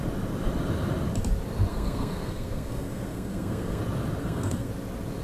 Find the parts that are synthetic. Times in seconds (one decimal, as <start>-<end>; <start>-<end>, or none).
1.7-3.8; 4.2-4.7